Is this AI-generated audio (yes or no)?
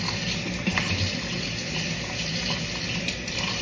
no